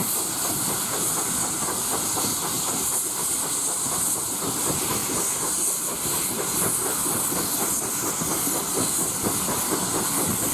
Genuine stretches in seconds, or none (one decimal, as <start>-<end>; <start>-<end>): 0.0-10.5

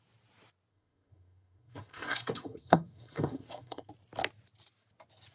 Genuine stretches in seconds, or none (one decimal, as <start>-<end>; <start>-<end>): 0.0-0.7; 3.9-5.3

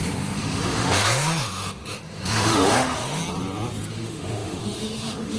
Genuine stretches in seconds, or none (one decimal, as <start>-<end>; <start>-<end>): 3.2-3.9

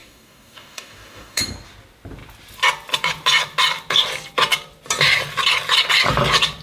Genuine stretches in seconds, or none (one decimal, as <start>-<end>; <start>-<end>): 1.4-6.6

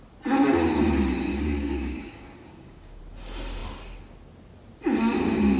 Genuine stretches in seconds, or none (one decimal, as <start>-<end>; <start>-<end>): 0.0-1.3; 3.0-5.6

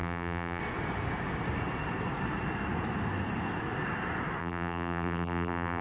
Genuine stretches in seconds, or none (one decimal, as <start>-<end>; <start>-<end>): 0.6-4.4